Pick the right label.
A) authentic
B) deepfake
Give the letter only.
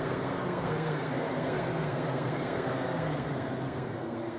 B